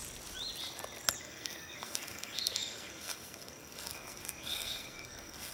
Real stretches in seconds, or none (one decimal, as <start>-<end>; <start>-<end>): 0.0-1.2